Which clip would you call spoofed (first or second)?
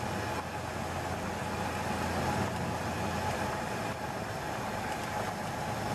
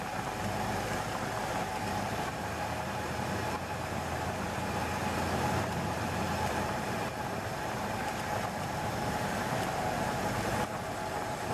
second